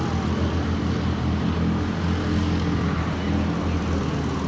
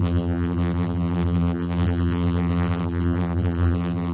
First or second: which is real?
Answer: first